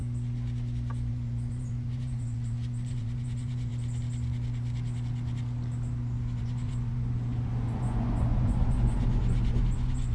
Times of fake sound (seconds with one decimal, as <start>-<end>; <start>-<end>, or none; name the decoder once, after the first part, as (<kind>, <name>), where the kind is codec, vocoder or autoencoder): 1.1-3.7 (vocoder, Vocos); 6.4-10.1